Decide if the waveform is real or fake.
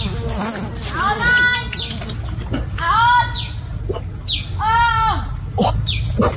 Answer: real